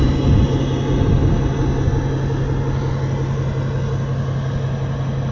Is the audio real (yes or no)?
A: yes